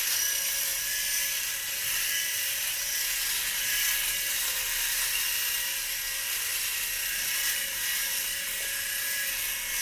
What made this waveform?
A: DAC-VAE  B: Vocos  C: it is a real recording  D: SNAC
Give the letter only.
C